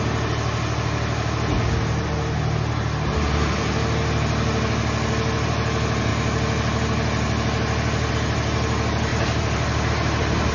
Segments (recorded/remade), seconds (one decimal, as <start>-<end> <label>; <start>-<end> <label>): 0.0-9.1 recorded; 9.1-9.9 remade; 9.9-10.5 recorded